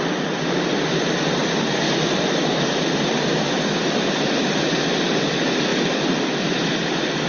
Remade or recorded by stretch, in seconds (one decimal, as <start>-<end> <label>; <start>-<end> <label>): 0.0-5.7 recorded; 5.7-7.3 remade